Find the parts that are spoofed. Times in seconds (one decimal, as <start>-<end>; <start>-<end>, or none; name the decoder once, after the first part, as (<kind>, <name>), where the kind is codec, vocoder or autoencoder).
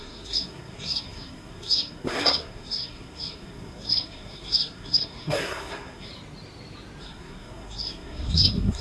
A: 0.0-6.1 (codec, SNAC); 7.0-8.8